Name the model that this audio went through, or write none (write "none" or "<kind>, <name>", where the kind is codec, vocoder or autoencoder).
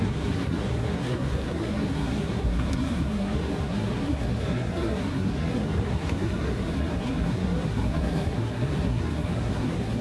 codec, SNAC